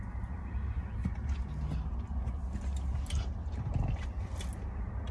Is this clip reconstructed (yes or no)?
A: no